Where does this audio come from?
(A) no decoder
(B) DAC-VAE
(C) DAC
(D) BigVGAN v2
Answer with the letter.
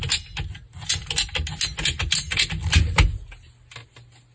A